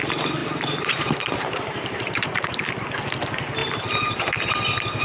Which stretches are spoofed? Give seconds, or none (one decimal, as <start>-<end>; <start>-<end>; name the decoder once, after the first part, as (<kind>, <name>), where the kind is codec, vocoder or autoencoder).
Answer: 0.4-2.8 (vocoder, BigVGAN v2); 3.6-4.5